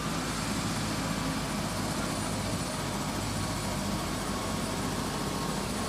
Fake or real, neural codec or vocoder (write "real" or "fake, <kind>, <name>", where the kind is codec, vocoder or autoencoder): real